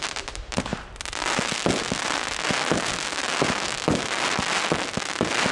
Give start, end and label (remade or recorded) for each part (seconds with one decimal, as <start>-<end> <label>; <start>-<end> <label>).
0.0-5.5 recorded